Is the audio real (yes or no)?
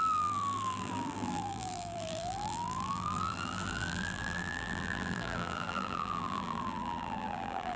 no